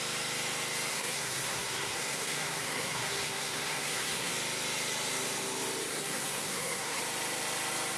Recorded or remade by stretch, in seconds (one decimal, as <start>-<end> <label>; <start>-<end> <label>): 0.0-0.9 recorded; 0.9-4.3 remade; 4.3-5.9 recorded; 5.9-7.0 remade; 7.0-8.0 recorded